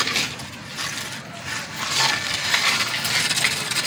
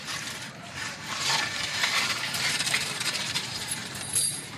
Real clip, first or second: first